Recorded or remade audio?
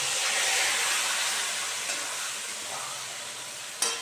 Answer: recorded